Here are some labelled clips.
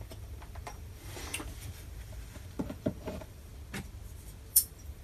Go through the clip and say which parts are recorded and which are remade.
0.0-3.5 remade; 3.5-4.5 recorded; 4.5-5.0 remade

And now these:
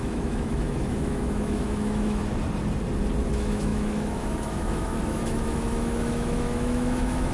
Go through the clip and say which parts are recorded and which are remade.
0.0-2.2 remade; 2.2-3.3 recorded; 3.3-7.3 remade